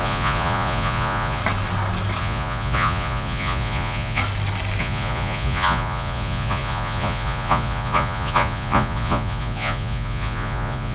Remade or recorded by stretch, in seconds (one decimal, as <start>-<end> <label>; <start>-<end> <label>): 0.0-1.4 remade; 1.4-2.2 recorded; 2.2-4.2 remade; 4.2-4.8 recorded; 4.8-10.9 remade